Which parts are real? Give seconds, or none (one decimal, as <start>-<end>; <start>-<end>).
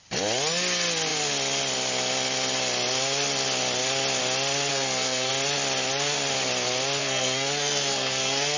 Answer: 0.0-4.7; 5.3-7.0